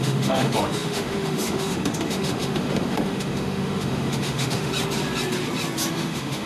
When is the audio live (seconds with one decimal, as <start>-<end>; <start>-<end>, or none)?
4.7-5.9

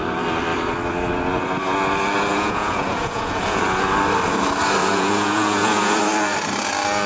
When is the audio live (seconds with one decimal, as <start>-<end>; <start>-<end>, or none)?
0.0-2.3; 3.6-4.8; 6.0-7.1

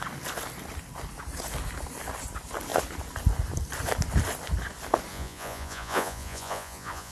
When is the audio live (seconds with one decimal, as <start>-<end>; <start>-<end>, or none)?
0.0-5.1

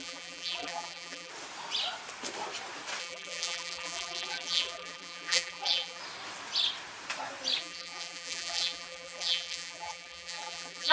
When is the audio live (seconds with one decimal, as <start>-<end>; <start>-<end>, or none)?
1.3-3.0; 6.0-7.6

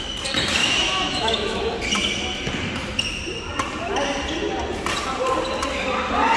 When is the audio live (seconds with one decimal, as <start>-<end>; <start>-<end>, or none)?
0.0-0.6; 1.8-6.4

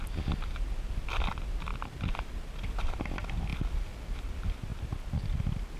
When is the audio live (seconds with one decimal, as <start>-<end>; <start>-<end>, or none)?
1.7-2.3; 3.5-4.2; 4.7-5.8

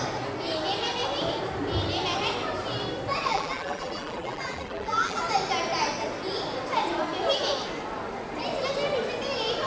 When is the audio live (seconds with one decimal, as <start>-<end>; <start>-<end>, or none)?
0.0-3.3; 5.2-9.7